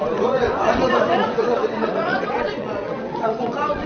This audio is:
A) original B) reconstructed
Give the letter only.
B